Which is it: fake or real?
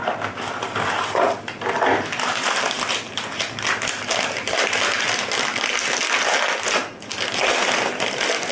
real